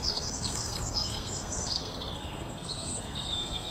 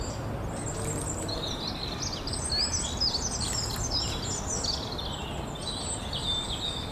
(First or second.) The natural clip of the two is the second